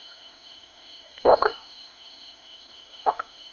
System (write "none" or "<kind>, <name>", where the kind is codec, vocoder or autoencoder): autoencoder, DAC-VAE